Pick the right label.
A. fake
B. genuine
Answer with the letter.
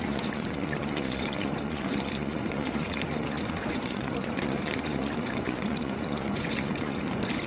A